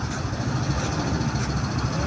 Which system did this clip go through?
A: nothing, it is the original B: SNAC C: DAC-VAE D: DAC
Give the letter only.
A